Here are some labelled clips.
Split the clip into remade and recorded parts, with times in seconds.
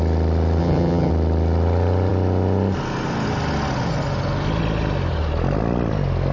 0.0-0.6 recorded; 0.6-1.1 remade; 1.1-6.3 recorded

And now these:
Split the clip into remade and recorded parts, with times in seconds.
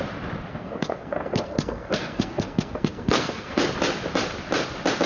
0.0-0.5 recorded; 0.5-3.6 remade; 3.6-5.1 recorded